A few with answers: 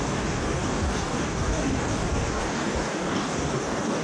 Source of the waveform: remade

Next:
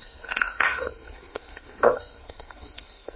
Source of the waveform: remade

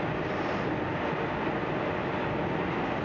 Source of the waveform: recorded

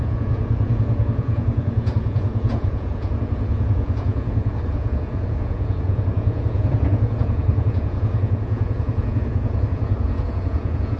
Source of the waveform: remade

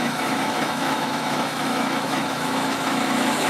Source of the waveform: remade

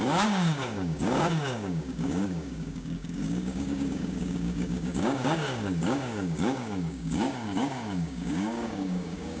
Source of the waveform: remade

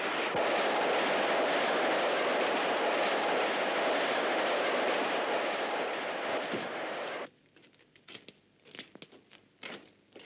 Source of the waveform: recorded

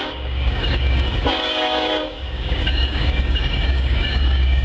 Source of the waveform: remade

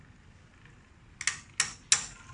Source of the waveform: recorded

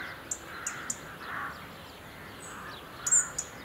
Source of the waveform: recorded